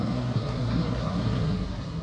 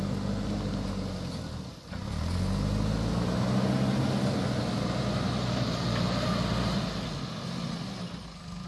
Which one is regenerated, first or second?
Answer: first